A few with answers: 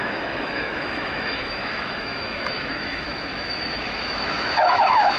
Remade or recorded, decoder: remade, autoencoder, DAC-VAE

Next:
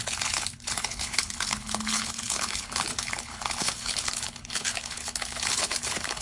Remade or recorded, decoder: remade, codec, HILCodec